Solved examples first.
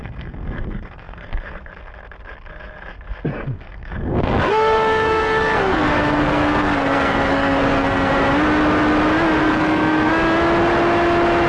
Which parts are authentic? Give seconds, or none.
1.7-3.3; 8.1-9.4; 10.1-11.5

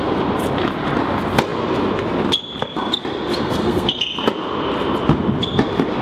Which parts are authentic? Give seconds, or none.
0.0-3.4; 4.0-6.0

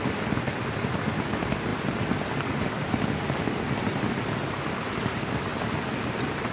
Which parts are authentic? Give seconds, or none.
0.0-6.5

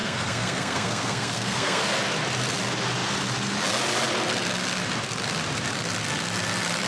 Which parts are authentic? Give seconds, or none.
1.8-6.9

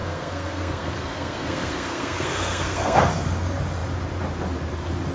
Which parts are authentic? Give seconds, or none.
3.1-5.1